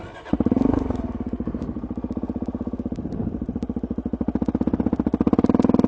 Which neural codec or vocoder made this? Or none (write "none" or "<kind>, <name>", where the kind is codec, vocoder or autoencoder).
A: none